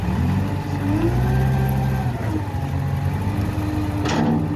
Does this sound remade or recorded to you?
recorded